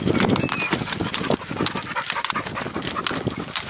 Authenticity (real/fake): real